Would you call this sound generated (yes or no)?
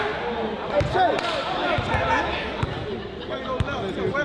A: no